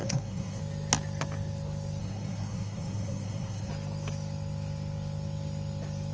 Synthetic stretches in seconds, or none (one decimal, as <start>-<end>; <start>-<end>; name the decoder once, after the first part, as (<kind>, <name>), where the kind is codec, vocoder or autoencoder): 0.0-0.6 (codec, SNAC); 2.0-3.7